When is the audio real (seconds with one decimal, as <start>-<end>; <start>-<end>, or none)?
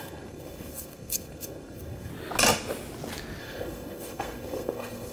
2.1-3.4